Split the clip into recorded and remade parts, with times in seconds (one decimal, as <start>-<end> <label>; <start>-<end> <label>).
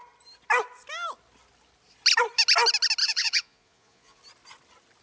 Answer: 0.0-3.0 recorded; 3.0-4.2 remade; 4.2-5.0 recorded